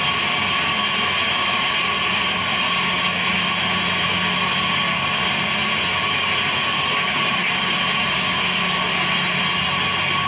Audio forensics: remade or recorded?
recorded